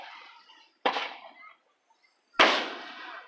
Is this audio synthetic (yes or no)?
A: no